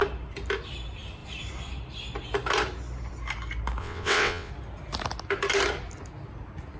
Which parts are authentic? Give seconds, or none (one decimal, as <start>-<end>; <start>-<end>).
0.0-3.8; 4.5-6.8